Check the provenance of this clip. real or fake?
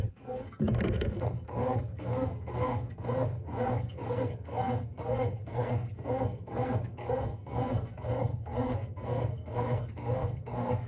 fake